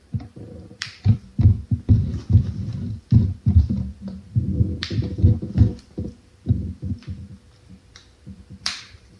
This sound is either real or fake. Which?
fake